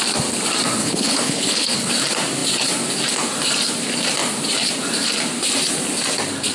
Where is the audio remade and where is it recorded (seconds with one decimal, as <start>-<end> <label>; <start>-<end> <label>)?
0.0-0.8 recorded; 0.8-1.9 remade; 1.9-6.5 recorded